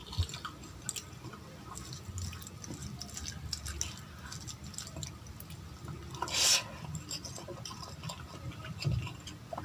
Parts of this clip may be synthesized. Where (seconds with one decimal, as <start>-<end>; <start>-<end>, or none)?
none

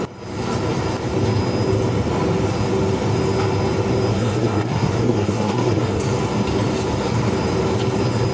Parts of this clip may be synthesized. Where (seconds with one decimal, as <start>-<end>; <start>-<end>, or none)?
4.1-6.0

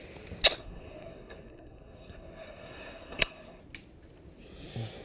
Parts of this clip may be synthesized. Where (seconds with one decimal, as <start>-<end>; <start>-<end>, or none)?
0.6-3.6

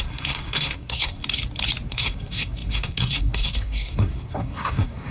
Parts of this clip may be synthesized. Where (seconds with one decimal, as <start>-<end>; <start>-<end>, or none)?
0.0-1.2; 1.9-5.1

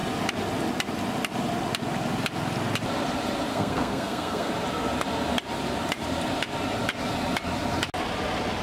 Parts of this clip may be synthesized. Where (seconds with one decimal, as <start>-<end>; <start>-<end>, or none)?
3.5-4.5

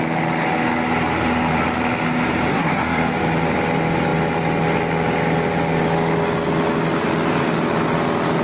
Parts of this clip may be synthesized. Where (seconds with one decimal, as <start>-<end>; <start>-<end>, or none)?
2.5-3.1